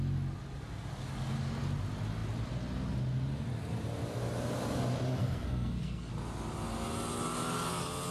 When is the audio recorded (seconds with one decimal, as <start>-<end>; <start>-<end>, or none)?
0.0-5.2; 6.1-8.1